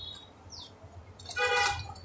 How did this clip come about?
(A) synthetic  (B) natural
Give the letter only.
B